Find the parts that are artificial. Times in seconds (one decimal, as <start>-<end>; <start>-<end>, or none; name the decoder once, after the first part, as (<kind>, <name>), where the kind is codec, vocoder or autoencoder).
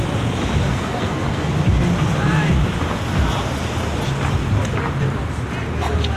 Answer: 0.7-1.5 (codec, SNAC)